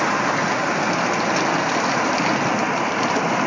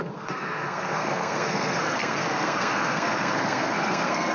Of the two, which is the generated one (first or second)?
second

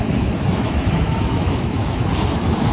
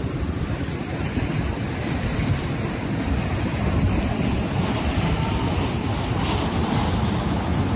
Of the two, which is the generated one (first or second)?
first